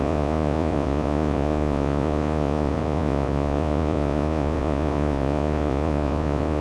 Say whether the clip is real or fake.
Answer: fake